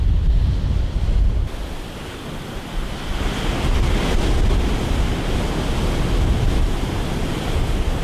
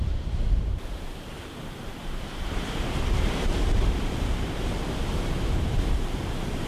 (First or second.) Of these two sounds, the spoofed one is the second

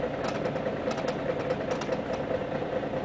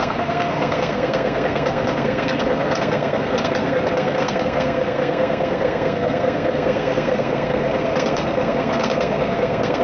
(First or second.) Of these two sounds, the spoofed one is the second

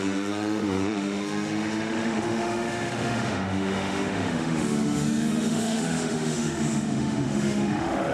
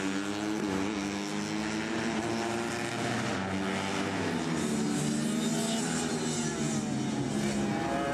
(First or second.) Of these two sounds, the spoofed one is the first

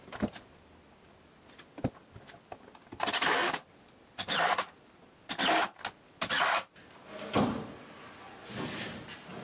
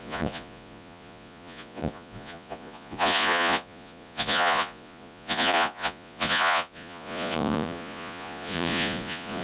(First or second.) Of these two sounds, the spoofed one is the second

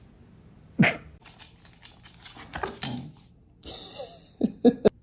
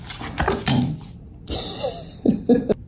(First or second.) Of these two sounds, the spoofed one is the second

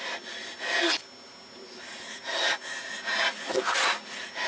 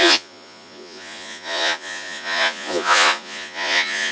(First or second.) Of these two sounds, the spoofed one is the second